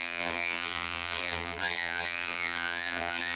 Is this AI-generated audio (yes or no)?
yes